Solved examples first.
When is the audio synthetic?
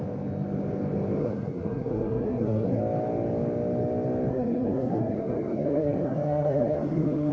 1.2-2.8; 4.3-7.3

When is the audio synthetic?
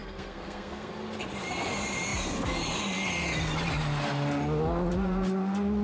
0.0-0.9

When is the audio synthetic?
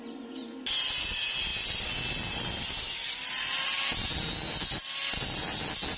none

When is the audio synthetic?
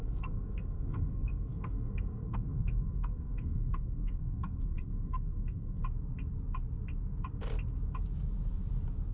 0.0-5.8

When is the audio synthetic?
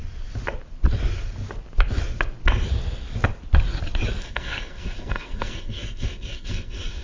4.2-7.0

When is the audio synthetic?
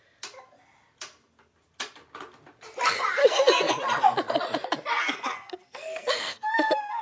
3.2-3.7; 4.9-7.0